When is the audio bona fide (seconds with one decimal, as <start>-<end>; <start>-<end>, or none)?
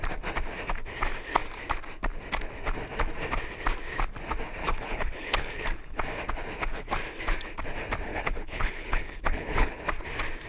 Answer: 0.0-4.6; 6.0-8.1; 9.8-10.5